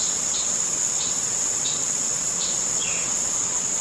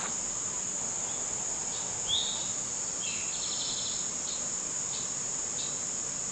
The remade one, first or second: first